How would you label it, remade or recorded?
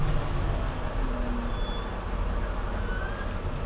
recorded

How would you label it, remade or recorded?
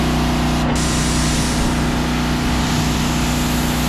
recorded